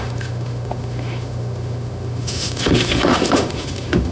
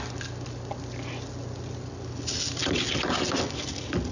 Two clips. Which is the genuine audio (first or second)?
second